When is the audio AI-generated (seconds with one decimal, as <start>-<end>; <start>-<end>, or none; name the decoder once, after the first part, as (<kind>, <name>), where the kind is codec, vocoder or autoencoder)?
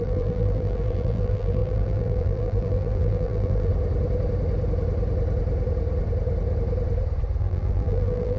0.0-3.7 (vocoder, BigVGAN v2); 7.4-8.4